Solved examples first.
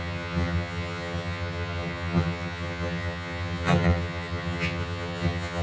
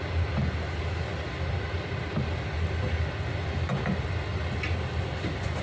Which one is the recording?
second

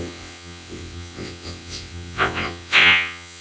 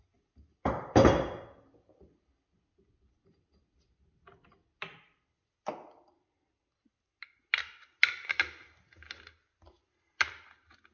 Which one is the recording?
second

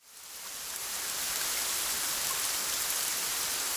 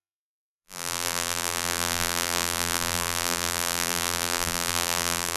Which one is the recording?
first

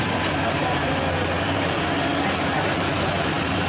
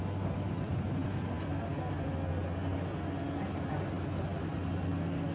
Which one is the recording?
second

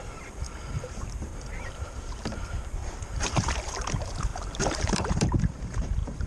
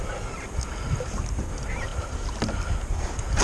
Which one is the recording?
second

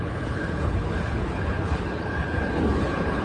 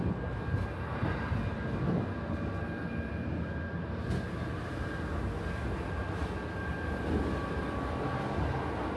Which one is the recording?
second